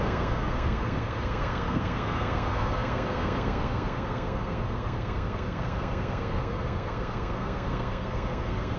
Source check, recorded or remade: remade